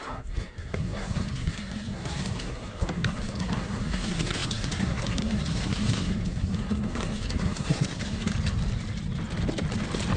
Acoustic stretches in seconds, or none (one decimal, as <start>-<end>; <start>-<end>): 8.3-10.2